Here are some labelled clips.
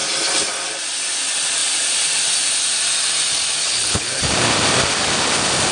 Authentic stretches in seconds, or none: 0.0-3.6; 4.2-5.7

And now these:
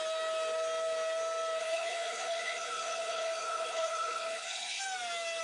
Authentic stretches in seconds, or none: 0.0-1.6; 4.8-5.4

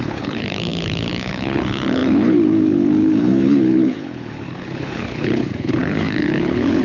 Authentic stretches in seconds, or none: none

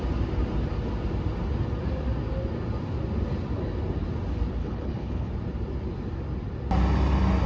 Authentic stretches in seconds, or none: 0.0-4.6; 5.3-7.5

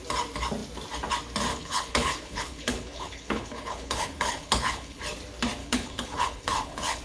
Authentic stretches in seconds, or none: 0.0-1.5; 5.0-5.6

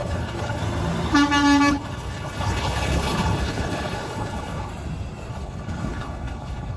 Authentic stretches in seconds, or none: 0.6-1.7; 4.7-5.3